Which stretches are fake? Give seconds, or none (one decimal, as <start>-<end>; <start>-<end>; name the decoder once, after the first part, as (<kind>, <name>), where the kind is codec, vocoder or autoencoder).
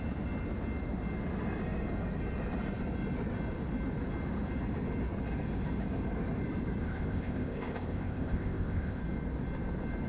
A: 6.8-9.0 (codec, ZipCodec)